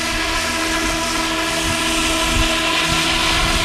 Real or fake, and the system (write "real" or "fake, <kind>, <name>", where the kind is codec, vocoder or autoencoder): real